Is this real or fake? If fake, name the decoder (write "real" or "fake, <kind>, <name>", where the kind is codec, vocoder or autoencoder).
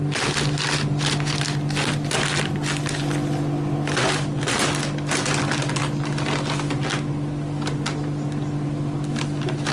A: real